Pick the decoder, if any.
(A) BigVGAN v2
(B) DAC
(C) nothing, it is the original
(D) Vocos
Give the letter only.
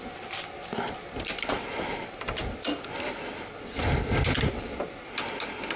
C